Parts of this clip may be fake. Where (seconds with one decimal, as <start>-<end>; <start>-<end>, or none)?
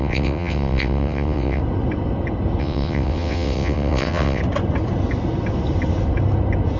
0.0-1.6; 2.6-4.4